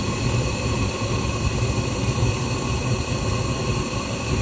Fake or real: real